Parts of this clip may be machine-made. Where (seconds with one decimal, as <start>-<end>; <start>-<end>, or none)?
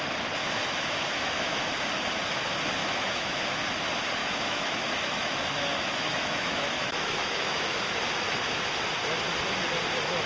0.4-1.7; 2.8-3.4; 4.2-7.9